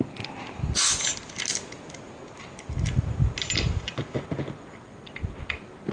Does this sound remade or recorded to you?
recorded